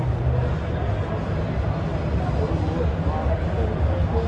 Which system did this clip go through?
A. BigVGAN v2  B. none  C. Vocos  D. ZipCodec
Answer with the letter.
B